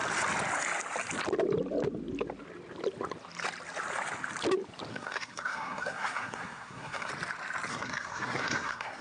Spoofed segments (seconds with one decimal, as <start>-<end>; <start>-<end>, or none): 4.9-7.1; 7.7-9.0